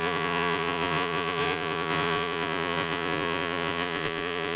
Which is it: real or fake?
fake